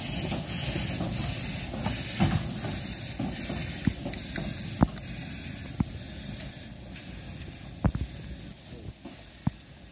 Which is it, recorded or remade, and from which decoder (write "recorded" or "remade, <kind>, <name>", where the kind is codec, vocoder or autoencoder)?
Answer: recorded